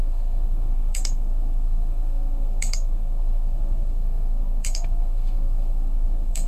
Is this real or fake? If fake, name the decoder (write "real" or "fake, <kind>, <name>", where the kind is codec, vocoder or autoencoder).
fake, codec, SNAC